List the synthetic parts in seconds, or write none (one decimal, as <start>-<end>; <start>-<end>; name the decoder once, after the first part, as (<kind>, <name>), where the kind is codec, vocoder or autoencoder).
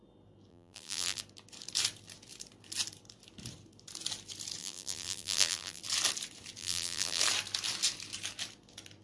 0.5-1.2 (vocoder, BigVGAN v2); 4.6-5.8; 6.6-7.2